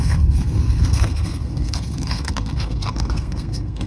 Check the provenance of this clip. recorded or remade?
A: remade